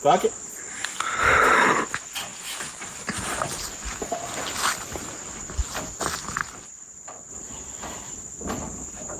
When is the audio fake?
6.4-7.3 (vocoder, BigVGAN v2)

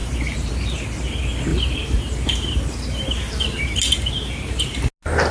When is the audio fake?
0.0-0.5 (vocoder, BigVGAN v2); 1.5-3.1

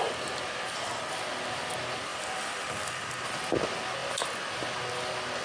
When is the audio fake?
2.1-3.4 (vocoder, BigVGAN v2)